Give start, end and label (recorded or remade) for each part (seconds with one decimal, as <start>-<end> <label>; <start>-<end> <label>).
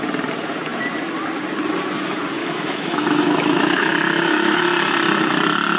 0.0-2.4 recorded; 2.4-4.6 remade; 4.6-5.8 recorded